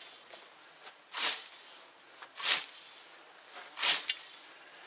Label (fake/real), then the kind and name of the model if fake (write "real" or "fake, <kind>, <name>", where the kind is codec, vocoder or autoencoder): real